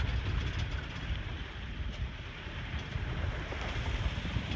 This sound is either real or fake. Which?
real